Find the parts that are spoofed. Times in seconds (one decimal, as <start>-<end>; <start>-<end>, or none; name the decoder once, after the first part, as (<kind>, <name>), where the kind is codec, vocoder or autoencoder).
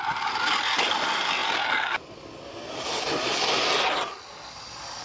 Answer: none